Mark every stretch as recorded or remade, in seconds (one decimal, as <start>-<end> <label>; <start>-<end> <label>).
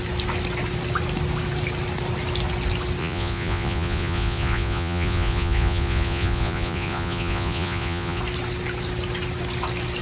0.0-3.0 recorded; 3.0-8.2 remade; 8.2-10.0 recorded